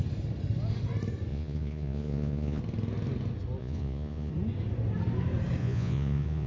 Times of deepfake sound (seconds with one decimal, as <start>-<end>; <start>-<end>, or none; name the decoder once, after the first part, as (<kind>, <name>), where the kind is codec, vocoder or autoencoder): 1.3-2.6 (vocoder, Vocos); 3.6-4.3; 5.6-6.5